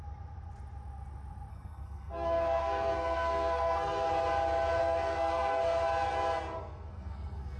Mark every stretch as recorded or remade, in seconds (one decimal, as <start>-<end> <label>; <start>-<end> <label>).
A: 0.0-1.5 recorded; 1.5-4.1 remade; 4.1-4.8 recorded; 4.8-5.6 remade; 5.6-6.6 recorded; 6.6-7.6 remade